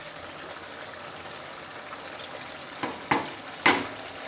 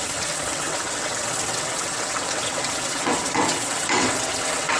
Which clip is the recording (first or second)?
first